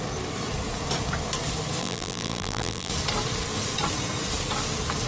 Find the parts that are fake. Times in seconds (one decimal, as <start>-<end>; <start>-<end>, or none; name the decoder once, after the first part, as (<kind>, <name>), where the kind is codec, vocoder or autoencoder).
1.8-2.9 (vocoder, BigVGAN v2)